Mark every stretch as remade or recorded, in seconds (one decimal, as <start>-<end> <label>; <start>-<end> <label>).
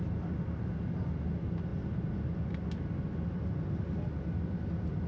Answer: 0.0-5.1 recorded